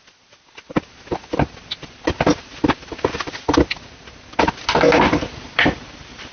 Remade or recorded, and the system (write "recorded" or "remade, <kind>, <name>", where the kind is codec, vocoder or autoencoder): recorded